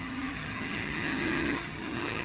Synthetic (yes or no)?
yes